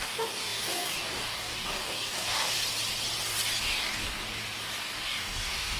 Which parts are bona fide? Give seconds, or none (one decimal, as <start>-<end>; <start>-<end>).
2.6-3.6; 4.2-4.8